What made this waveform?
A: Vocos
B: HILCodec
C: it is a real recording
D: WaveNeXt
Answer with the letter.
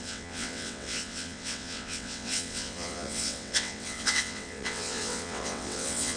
D